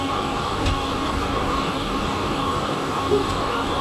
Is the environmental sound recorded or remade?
remade